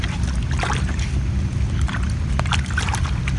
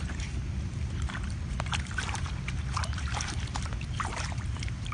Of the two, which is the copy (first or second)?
second